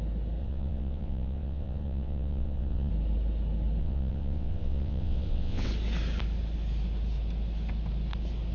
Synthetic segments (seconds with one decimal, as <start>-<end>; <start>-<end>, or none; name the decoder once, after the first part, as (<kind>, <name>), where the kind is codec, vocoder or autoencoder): 0.4-2.9 (vocoder, WaveNeXt); 3.8-5.7